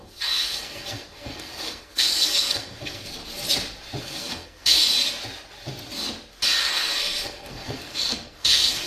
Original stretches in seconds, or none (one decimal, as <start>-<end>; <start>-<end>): 3.2-4.0; 4.8-6.6